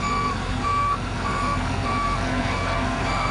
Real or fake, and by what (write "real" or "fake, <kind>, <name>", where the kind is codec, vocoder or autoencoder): fake, codec, SNAC